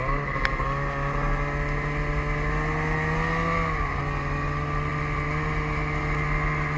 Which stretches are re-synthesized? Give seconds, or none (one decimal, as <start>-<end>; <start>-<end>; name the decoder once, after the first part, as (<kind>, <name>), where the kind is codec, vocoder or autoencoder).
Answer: none

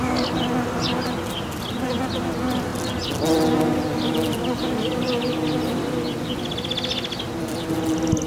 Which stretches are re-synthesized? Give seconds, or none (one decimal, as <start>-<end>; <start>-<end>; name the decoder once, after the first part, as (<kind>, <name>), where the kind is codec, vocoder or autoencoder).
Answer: none

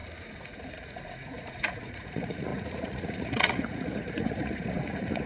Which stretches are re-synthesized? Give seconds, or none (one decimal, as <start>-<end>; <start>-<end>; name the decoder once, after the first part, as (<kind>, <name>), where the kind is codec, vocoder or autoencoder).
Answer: 0.0-5.3 (vocoder, Vocos)